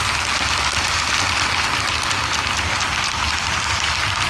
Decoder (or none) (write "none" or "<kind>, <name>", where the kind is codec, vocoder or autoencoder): none